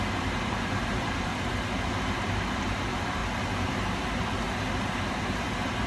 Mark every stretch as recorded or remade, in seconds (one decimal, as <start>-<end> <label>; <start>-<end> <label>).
0.0-1.3 remade; 1.3-2.6 recorded; 2.6-3.2 remade; 3.2-5.2 recorded; 5.2-5.9 remade